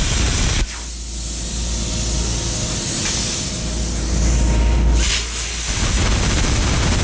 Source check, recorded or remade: recorded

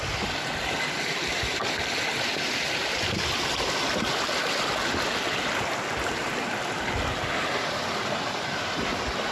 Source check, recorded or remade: recorded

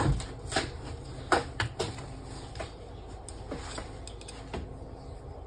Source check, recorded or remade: recorded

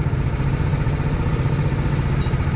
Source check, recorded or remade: recorded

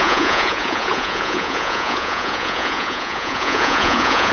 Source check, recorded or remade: remade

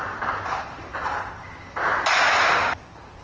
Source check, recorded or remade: recorded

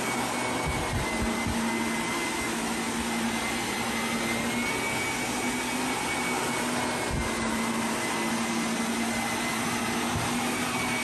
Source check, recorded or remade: recorded